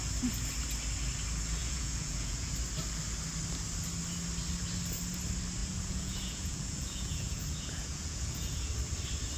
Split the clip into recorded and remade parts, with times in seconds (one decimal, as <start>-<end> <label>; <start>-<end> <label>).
0.0-1.6 recorded; 1.6-2.5 remade; 2.5-5.6 recorded; 5.6-8.7 remade; 8.7-9.4 recorded